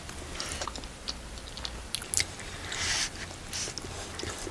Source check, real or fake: real